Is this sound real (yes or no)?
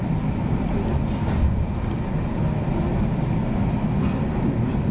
yes